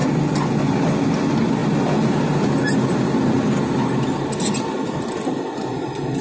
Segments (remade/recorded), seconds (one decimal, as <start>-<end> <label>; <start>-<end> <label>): 0.0-6.2 recorded